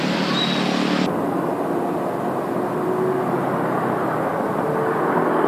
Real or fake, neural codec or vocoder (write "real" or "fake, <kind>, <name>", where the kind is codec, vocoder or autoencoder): real